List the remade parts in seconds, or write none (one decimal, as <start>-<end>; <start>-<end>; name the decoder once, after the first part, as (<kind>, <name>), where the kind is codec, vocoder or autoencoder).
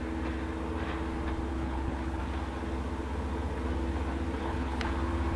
1.5-2.2 (codec, HILCodec); 4.4-4.9